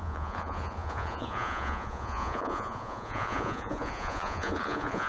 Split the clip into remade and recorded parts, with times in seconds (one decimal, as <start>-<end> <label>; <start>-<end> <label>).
0.0-5.1 remade